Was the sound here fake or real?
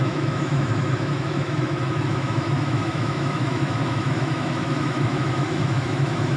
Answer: fake